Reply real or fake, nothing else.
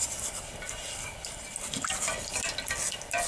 real